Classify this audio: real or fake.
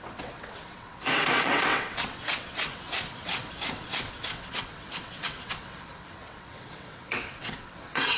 fake